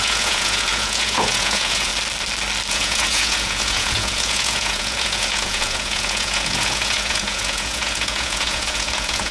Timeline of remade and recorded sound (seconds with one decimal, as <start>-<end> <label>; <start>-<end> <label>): 0.0-1.9 remade; 1.9-2.7 recorded; 2.7-9.3 remade